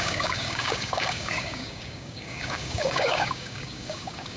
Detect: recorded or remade remade